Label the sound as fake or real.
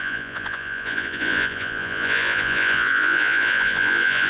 fake